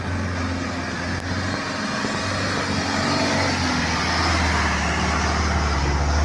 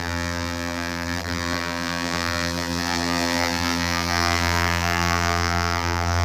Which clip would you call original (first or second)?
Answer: first